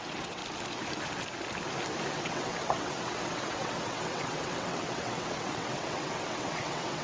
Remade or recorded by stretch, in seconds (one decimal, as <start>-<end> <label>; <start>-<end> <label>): 0.0-0.4 remade; 0.4-2.1 recorded; 2.1-7.0 remade